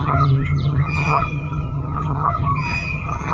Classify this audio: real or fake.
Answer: fake